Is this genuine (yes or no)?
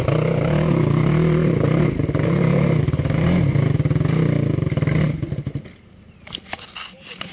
yes